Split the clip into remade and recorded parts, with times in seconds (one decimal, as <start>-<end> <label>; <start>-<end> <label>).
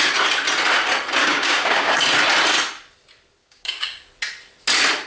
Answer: 0.0-1.2 recorded; 1.2-2.0 remade; 2.0-3.4 recorded; 3.4-4.1 remade; 4.1-5.1 recorded